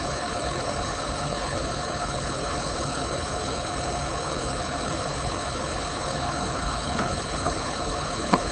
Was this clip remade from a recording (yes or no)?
yes